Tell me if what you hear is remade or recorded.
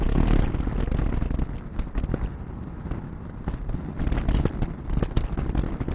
recorded